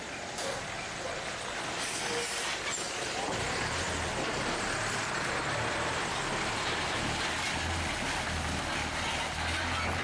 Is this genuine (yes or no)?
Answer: yes